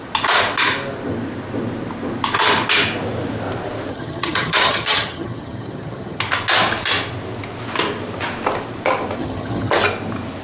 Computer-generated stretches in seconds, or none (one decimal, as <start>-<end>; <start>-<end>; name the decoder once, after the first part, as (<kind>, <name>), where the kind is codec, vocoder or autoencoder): 3.9-6.2 (vocoder, HiFi-GAN); 9.2-9.7